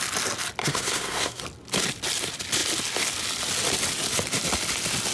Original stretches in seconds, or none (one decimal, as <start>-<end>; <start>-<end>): 0.0-0.6; 1.4-5.1